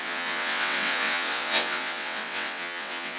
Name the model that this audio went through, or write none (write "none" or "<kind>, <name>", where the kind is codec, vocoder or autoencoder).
vocoder, WaveNeXt